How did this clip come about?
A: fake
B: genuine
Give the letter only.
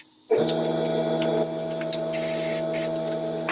B